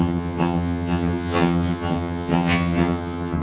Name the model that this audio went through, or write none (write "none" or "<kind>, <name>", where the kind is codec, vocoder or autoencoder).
vocoder, HiFi-GAN